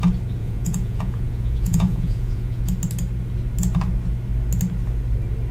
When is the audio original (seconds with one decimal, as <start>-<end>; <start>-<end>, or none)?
0.0-0.4; 2.6-5.5